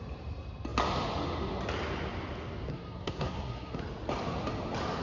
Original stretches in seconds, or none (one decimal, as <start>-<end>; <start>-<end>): 0.0-2.7; 3.8-5.0